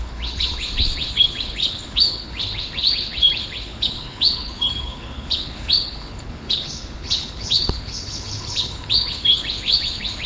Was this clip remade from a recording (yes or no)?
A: yes